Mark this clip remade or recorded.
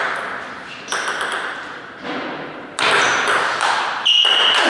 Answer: recorded